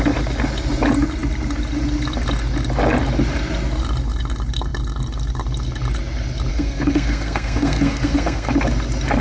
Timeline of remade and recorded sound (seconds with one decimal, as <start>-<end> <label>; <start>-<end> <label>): 0.0-6.5 recorded; 6.5-8.5 remade; 8.5-9.2 recorded